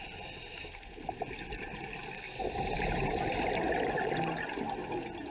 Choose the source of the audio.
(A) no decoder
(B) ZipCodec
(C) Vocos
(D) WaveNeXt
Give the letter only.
A